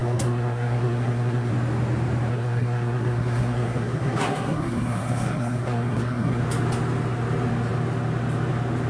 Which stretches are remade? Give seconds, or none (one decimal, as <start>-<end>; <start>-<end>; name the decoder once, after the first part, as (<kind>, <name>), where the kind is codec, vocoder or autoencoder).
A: 0.0-1.5 (codec, SNAC); 2.3-6.4